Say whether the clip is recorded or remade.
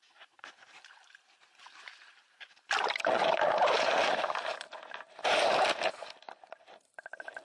remade